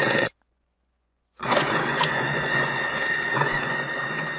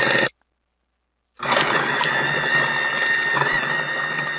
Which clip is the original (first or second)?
second